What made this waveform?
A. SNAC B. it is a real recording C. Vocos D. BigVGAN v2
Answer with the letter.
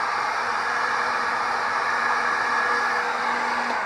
B